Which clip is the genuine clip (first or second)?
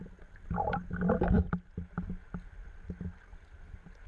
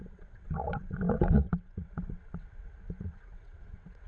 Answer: first